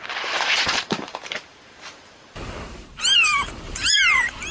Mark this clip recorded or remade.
remade